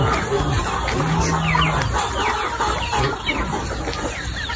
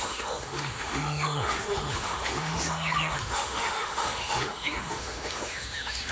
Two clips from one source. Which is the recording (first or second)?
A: first